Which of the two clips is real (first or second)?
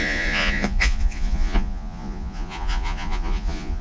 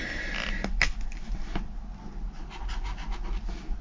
second